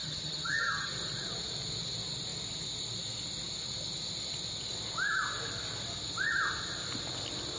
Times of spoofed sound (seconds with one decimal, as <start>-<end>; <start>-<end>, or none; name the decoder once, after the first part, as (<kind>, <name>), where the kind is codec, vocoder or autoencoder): 0.0-0.9 (vocoder, HiFi-GAN)